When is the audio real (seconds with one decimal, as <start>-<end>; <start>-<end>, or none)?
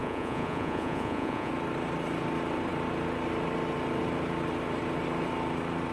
1.5-5.9